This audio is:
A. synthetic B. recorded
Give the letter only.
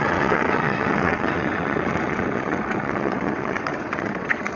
A